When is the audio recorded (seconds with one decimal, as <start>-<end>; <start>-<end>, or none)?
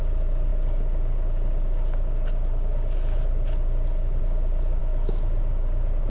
0.0-6.1